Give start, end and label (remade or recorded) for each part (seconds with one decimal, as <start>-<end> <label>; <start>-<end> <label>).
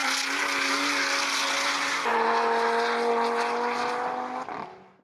0.0-5.0 recorded